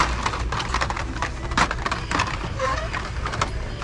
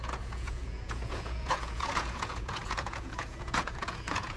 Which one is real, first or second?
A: first